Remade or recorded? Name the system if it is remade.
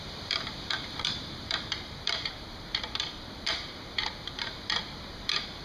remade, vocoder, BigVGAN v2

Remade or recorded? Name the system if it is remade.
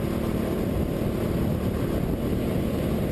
recorded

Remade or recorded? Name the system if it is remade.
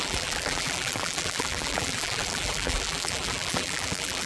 remade, vocoder, BigVGAN v2